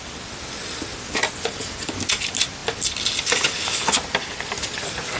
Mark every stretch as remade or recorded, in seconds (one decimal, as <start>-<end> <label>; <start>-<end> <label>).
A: 0.0-5.2 recorded